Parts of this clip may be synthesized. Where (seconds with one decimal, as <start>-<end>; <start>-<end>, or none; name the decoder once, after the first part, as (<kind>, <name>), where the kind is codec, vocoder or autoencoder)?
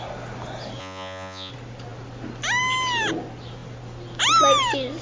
0.8-1.5 (vocoder, Vocos)